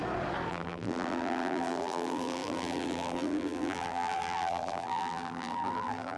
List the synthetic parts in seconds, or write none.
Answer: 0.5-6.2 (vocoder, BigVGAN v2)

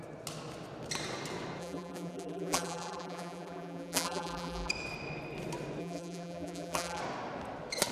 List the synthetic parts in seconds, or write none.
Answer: 1.6-4.7 (vocoder, BigVGAN v2); 5.8-7.0

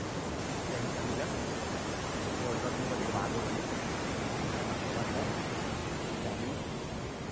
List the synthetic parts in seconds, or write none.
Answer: none

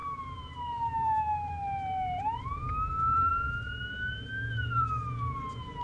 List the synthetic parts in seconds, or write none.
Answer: 0.0-3.3 (vocoder, BigVGAN v2); 4.5-5.8

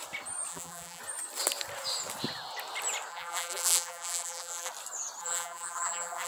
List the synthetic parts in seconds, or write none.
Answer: 0.5-1.0 (vocoder, BigVGAN v2); 3.1-4.7; 5.2-6.3

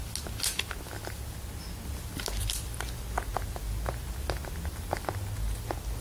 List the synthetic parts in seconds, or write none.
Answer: none

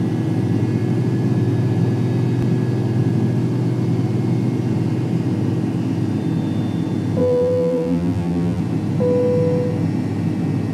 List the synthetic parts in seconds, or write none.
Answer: 7.2-8.6 (vocoder, BigVGAN v2)